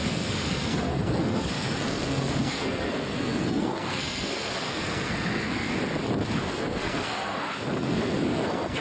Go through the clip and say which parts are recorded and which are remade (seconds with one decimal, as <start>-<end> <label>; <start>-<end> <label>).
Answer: 0.0-5.7 remade; 5.7-6.5 recorded; 6.5-8.8 remade